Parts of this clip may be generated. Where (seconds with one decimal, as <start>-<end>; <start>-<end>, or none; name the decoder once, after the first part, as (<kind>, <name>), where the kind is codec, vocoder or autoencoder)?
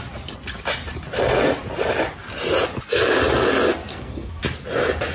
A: 3.9-4.4 (codec, SNAC)